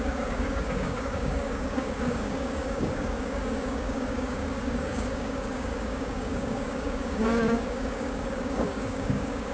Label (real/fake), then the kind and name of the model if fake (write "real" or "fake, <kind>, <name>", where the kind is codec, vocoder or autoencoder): fake, codec, DAC